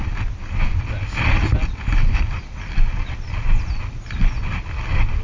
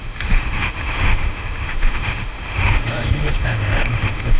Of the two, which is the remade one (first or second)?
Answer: second